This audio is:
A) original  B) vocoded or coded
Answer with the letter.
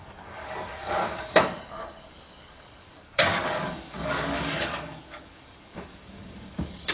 B